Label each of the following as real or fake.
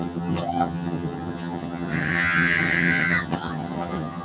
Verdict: fake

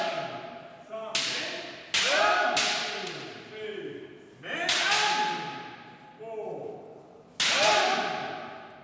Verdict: real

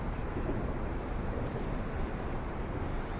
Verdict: fake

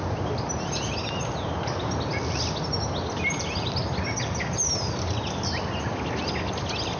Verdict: real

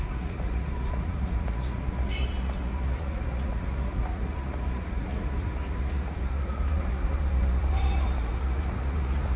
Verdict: fake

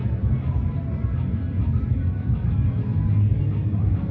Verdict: real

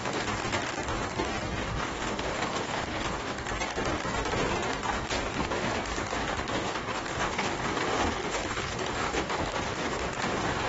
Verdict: fake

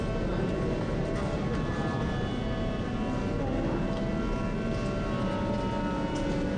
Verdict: real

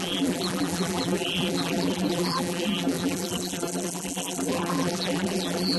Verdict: fake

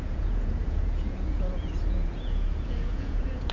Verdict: fake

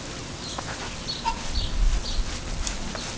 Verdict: real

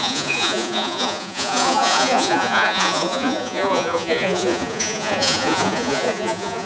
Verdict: fake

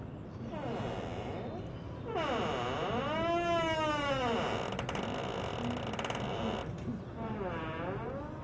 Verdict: real